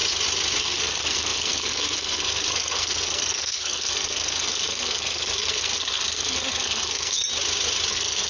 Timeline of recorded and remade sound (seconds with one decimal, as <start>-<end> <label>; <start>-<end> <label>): 0.0-0.6 recorded; 0.6-7.2 remade; 7.2-7.9 recorded; 7.9-8.3 remade